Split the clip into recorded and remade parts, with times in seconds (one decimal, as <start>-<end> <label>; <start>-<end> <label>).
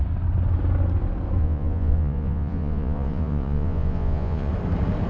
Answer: 0.0-1.4 recorded; 1.4-4.5 remade; 4.5-5.1 recorded